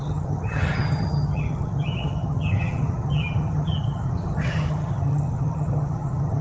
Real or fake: fake